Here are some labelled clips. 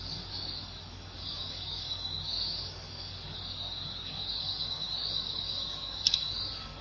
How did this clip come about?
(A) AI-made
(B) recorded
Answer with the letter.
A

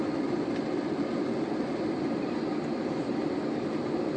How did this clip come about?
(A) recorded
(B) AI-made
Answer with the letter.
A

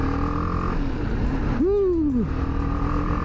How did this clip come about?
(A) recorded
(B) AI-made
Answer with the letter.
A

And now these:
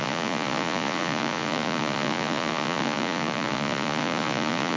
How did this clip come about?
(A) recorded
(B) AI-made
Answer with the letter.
B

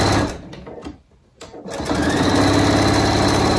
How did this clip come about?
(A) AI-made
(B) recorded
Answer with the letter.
B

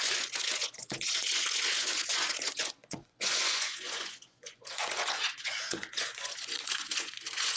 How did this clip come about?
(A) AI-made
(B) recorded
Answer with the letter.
A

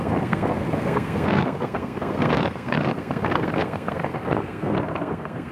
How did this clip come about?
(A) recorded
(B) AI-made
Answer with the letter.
B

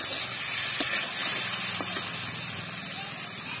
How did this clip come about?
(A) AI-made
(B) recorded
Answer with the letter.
B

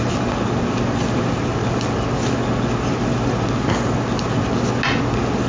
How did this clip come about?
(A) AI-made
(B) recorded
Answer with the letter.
B